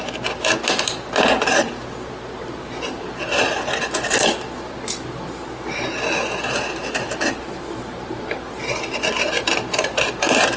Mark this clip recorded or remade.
recorded